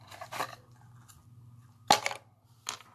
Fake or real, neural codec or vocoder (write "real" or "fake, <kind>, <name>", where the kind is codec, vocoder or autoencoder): real